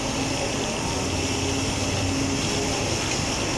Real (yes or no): yes